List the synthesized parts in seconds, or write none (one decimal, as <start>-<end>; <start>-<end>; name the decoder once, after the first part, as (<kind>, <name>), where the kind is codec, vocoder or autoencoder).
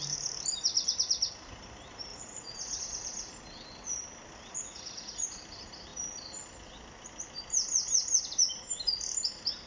2.1-2.8 (vocoder, Vocos); 4.7-5.3